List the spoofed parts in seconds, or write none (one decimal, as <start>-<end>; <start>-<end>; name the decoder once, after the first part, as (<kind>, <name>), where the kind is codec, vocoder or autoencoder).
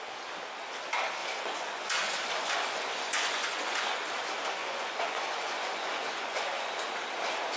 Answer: 1.2-4.1 (vocoder, Vocos); 4.6-6.9